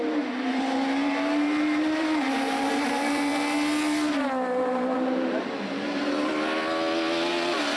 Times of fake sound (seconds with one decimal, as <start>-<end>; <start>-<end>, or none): 0.0-3.3; 4.6-6.3; 7.3-7.8